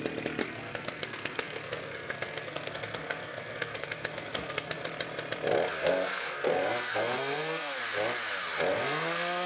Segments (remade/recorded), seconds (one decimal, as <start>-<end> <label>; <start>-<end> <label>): 0.0-0.4 recorded; 0.4-4.8 remade; 4.8-5.8 recorded; 5.8-7.8 remade; 7.8-8.7 recorded; 8.7-9.5 remade